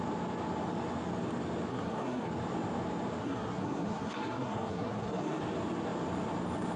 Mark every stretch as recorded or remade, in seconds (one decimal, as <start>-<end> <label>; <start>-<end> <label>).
0.0-1.7 recorded; 1.7-2.3 remade; 2.3-3.2 recorded; 3.2-5.4 remade; 5.4-6.8 recorded